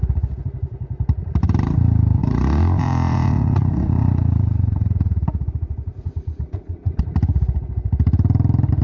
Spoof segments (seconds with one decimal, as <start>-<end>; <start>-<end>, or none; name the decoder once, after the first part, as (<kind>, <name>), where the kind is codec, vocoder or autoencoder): 2.2-7.0 (vocoder, Vocos)

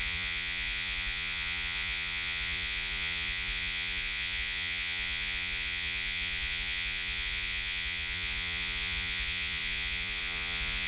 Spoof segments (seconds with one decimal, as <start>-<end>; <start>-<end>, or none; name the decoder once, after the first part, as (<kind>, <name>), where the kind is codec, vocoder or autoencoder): 0.0-10.9 (vocoder, Vocos)

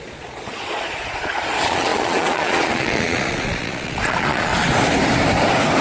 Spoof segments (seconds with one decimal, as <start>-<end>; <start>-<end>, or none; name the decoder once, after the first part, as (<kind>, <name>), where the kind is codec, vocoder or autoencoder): 0.0-4.5 (vocoder, Vocos)

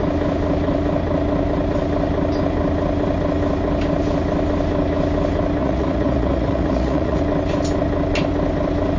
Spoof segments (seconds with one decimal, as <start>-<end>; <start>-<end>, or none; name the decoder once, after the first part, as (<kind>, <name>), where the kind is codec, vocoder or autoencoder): 5.6-7.2 (vocoder, Vocos)

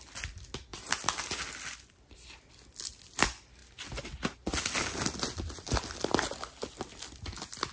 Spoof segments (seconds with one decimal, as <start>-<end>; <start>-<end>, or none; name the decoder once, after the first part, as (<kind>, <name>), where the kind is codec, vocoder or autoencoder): none

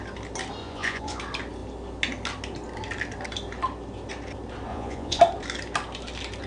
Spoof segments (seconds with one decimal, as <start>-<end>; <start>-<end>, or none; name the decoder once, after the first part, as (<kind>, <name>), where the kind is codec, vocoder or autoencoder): 0.6-1.2 (vocoder, Vocos); 4.7-5.2

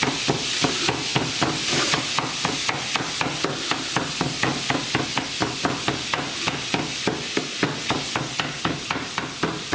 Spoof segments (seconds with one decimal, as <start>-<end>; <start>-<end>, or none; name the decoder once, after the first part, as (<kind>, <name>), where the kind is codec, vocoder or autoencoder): none

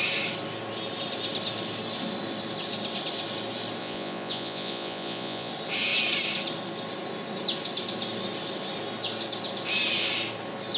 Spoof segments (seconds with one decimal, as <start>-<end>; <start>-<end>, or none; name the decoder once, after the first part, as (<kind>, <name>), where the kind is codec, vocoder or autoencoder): 3.8-5.5 (vocoder, Vocos)